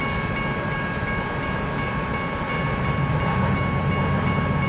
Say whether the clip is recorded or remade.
recorded